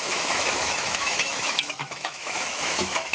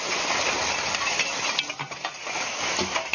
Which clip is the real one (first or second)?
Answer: second